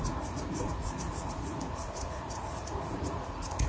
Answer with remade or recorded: remade